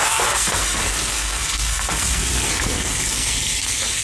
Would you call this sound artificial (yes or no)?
yes